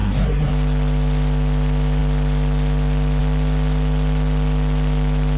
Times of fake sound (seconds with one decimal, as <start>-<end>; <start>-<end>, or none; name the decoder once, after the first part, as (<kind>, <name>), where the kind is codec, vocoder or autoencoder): 0.0-0.5 (codec, SNAC)